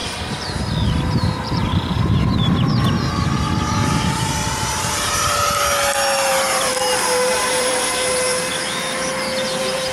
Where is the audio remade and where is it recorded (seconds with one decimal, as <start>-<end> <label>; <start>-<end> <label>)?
0.0-0.6 remade; 0.6-1.6 recorded; 1.6-5.3 remade; 5.3-6.3 recorded; 6.3-8.5 remade; 8.5-9.9 recorded